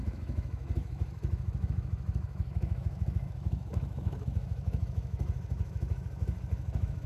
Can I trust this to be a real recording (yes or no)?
no